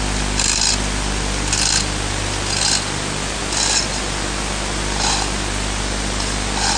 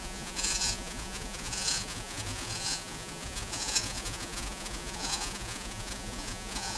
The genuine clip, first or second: first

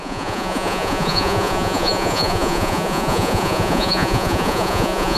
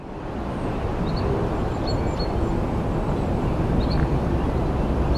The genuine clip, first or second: second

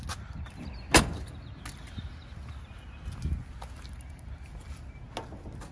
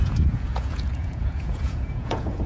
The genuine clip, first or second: first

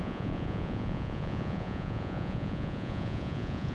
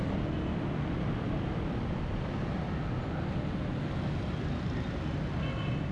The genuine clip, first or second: second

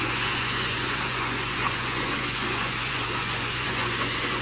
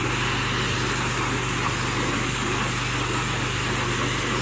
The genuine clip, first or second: second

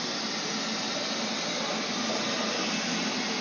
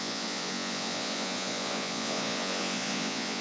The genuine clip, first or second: first